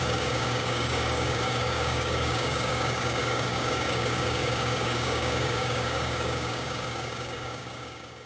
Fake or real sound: fake